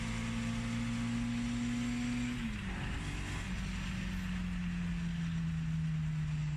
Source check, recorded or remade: recorded